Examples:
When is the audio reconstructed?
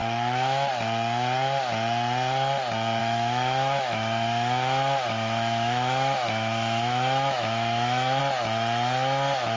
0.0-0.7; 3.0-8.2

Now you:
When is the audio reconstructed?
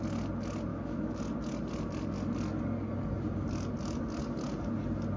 0.7-1.2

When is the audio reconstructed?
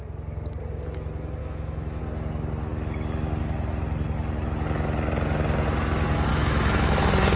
1.4-2.0; 6.3-7.0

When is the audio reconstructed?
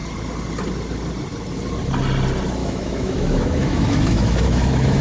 2.6-5.0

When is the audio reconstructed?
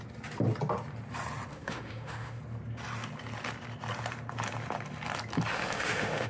1.5-2.4; 5.5-6.3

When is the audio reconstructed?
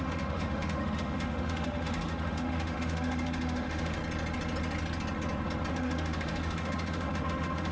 0.0-4.0; 5.7-7.7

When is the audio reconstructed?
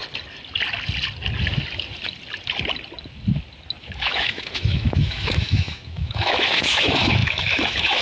3.8-8.0